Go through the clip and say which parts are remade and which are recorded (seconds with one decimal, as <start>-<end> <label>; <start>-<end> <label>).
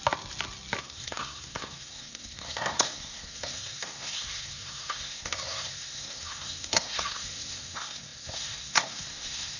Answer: 0.0-0.8 recorded; 0.8-9.6 remade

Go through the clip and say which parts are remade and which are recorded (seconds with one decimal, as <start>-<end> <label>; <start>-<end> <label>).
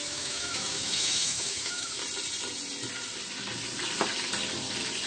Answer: 0.0-2.0 remade; 2.0-5.1 recorded